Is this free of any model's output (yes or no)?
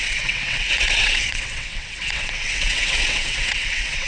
no